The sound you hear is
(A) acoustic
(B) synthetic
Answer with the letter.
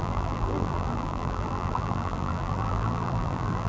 B